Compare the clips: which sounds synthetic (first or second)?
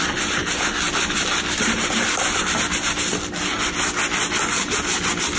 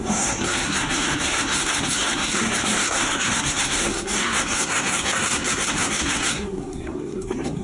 second